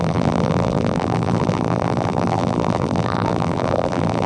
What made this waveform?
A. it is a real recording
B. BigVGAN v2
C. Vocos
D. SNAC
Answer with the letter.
B